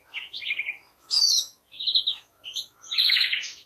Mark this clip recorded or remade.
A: remade